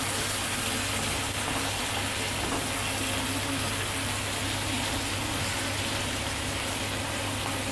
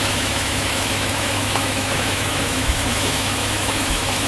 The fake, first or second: second